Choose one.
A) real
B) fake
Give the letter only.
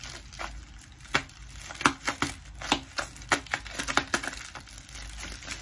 A